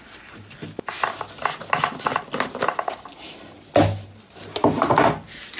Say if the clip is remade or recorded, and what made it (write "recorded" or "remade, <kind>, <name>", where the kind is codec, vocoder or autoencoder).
recorded